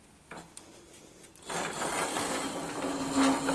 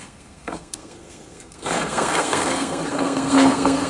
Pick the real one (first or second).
first